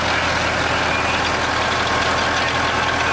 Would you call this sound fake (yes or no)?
no